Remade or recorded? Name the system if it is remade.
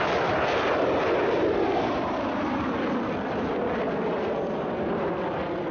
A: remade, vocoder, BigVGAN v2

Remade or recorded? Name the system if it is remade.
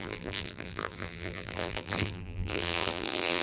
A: remade, vocoder, BigVGAN v2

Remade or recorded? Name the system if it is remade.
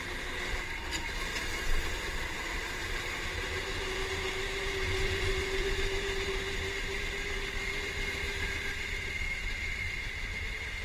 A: remade, vocoder, BigVGAN v2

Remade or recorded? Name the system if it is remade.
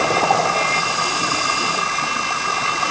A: remade, vocoder, BigVGAN v2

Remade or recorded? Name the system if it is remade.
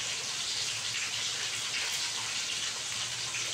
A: recorded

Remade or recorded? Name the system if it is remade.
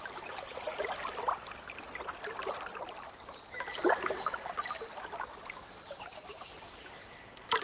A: remade, vocoder, BigVGAN v2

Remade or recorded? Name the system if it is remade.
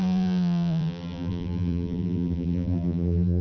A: remade, vocoder, BigVGAN v2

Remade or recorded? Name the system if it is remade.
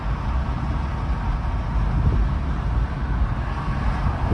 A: recorded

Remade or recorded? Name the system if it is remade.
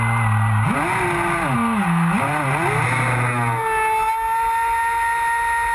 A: recorded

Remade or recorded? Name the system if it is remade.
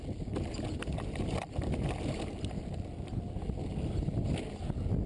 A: recorded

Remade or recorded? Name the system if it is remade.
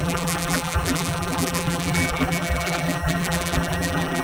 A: remade, vocoder, BigVGAN v2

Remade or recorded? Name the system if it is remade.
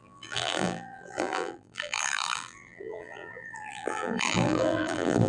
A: remade, vocoder, BigVGAN v2